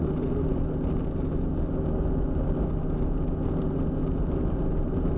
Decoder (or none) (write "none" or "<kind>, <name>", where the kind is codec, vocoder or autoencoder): none